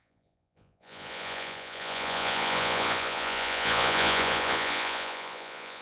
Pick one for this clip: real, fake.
fake